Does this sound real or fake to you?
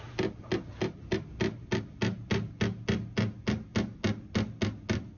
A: real